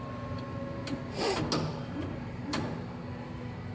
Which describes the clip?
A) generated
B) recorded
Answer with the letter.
B